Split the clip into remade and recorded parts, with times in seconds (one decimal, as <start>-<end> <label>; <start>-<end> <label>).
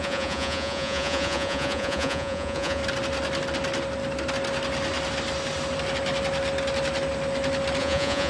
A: 0.0-2.8 remade; 2.8-7.8 recorded; 7.8-8.3 remade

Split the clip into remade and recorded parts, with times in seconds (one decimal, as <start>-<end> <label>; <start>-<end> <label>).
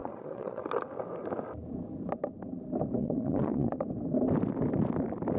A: 0.0-0.6 remade; 0.6-3.0 recorded; 3.0-3.8 remade; 3.8-5.4 recorded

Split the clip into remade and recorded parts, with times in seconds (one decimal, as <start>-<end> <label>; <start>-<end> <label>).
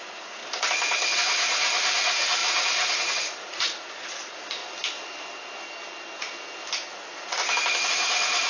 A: 0.0-0.4 remade; 0.4-1.2 recorded; 1.2-4.6 remade; 4.6-6.9 recorded; 6.9-7.4 remade; 7.4-7.9 recorded; 7.9-8.5 remade